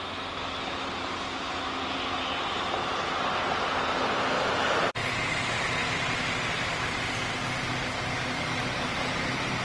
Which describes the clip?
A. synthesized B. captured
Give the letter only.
B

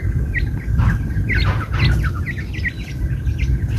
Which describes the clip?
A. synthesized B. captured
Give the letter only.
B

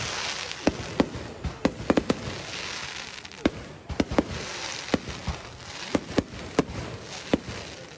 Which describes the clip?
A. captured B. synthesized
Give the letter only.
A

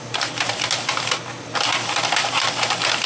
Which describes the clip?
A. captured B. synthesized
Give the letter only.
A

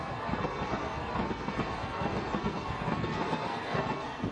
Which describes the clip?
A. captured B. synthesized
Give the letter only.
B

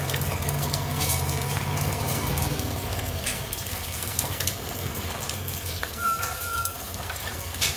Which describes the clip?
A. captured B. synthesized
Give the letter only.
B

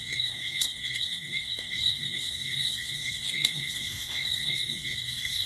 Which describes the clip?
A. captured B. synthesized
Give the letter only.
B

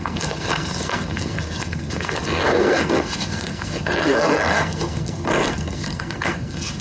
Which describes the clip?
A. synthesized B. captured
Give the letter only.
A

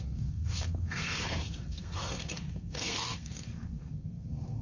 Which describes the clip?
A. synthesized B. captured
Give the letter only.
A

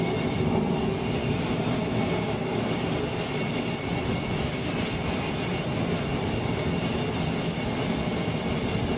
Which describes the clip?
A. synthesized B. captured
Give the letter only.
B